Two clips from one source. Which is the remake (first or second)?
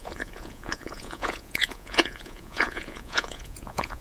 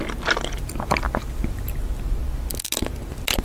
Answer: first